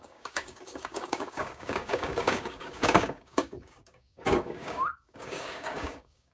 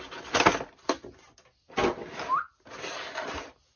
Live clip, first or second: second